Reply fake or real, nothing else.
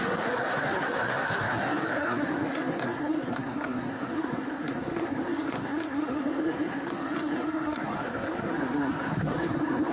fake